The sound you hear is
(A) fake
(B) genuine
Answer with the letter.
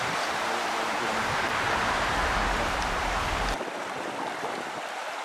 A